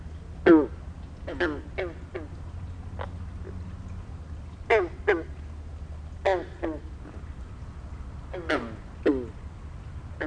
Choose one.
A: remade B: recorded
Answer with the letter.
B